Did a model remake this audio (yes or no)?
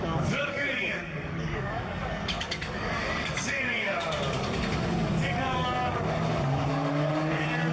yes